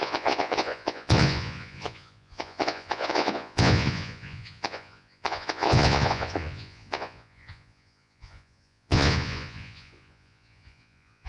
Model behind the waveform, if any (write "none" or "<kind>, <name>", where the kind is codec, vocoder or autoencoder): vocoder, Vocos